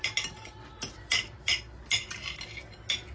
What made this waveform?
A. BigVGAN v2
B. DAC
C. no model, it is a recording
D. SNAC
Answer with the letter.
C